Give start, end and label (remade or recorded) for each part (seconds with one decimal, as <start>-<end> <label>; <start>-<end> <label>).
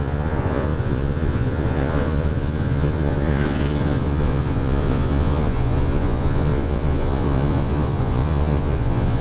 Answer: 0.0-9.2 remade